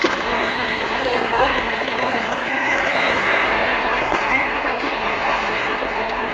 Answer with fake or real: fake